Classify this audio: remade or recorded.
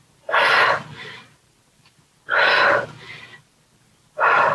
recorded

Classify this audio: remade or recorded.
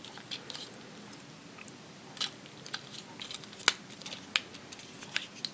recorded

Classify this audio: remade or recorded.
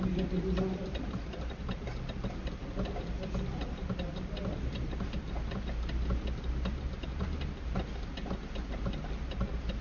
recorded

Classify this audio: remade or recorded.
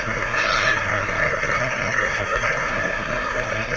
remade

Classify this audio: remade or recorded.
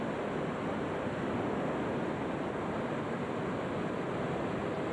recorded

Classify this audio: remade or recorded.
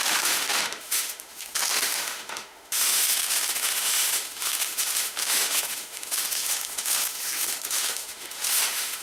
remade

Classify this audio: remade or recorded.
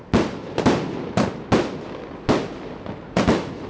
recorded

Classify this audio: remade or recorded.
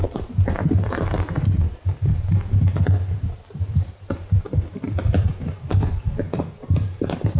remade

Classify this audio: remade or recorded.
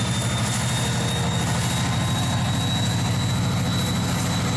recorded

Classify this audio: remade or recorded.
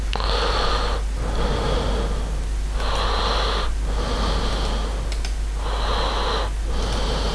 recorded